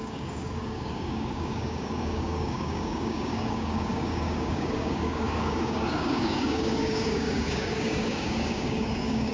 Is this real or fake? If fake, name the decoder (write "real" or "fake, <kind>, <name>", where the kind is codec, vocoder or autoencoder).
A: fake, codec, DAC